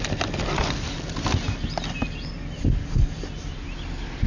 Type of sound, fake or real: real